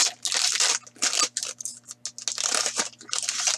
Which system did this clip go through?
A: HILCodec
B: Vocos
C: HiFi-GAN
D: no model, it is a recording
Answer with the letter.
D